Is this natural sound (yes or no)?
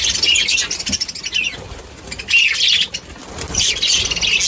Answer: yes